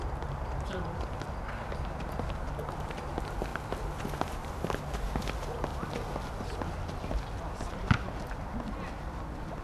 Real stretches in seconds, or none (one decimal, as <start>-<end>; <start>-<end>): 0.0-9.6